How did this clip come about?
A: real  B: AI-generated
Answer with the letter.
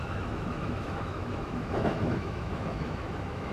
B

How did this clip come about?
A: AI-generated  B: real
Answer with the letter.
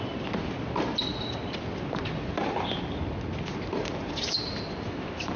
B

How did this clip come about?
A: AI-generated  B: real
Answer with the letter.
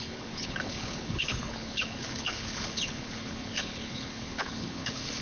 A